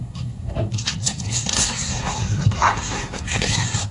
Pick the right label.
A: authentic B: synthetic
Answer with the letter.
B